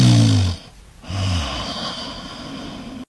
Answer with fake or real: real